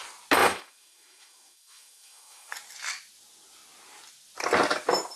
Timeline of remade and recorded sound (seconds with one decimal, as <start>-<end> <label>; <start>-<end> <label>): 0.0-0.4 recorded; 0.4-2.5 remade; 2.5-5.2 recorded